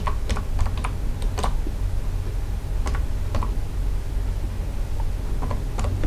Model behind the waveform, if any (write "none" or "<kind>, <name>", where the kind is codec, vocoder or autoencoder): none